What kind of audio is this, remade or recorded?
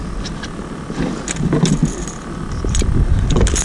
recorded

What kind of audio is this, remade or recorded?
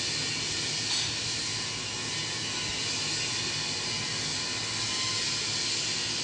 recorded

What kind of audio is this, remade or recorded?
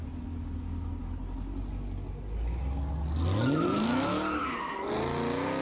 recorded